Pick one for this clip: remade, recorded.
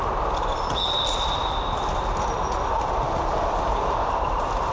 recorded